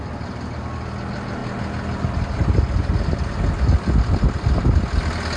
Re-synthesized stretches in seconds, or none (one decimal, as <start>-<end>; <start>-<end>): none